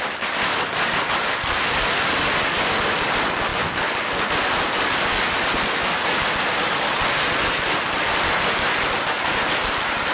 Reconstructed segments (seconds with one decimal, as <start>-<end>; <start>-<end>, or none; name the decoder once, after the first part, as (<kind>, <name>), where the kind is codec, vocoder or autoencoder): none